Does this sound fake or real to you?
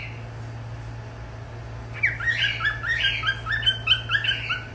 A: real